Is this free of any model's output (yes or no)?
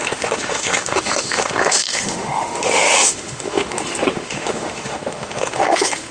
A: no